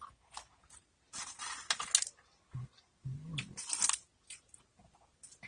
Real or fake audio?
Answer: real